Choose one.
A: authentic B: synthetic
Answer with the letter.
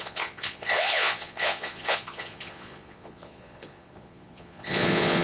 B